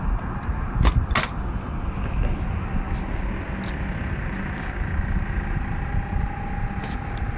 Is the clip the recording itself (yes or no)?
yes